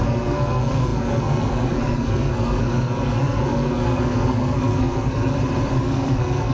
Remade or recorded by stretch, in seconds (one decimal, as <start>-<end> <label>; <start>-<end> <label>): 0.0-5.3 remade; 5.3-5.8 recorded; 5.8-6.5 remade